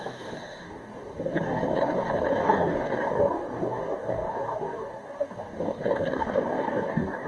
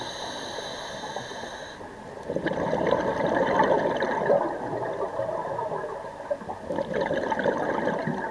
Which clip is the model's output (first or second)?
first